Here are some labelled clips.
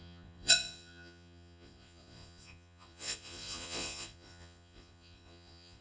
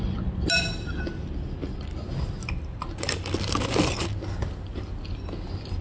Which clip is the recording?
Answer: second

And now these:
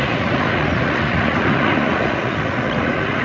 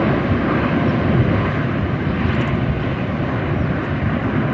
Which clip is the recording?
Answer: second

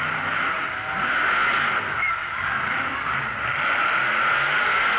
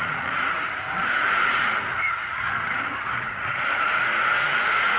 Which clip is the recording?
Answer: first